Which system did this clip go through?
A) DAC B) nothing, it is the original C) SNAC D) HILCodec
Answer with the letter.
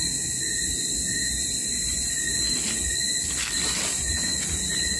B